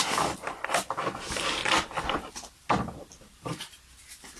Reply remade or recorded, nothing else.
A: recorded